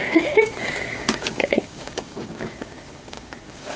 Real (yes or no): no